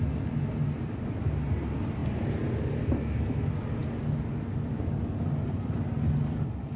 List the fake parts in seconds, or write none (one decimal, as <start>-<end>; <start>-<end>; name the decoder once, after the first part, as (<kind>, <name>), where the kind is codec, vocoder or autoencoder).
none